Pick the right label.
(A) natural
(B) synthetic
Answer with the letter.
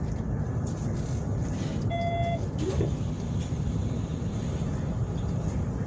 A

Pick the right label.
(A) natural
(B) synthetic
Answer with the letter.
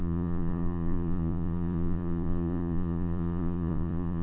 B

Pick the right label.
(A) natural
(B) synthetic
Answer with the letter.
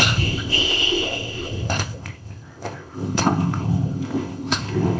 B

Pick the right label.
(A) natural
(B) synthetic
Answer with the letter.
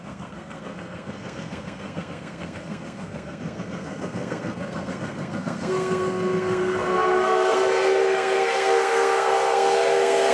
B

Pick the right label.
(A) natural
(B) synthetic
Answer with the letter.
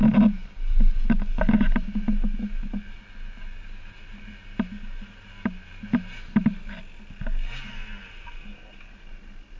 A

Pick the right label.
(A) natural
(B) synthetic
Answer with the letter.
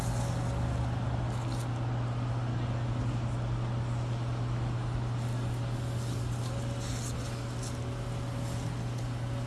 A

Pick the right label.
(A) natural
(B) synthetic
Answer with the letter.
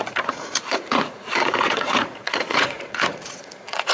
B